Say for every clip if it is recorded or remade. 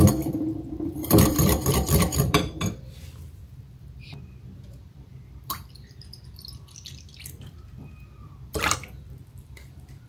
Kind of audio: remade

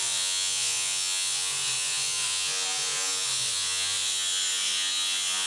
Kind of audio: remade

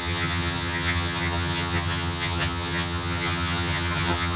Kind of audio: remade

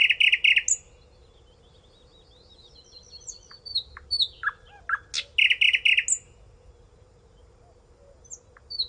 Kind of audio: recorded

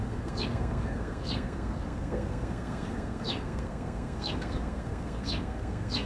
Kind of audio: remade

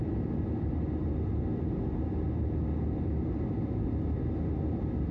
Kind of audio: recorded